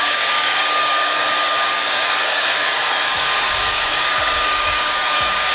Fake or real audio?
fake